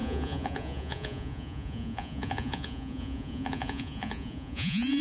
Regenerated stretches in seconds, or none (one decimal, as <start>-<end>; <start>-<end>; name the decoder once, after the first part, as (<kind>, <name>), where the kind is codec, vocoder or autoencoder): 0.0-5.0 (vocoder, Vocos)